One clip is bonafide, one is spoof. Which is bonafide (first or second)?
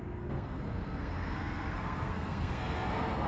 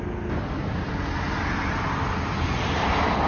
second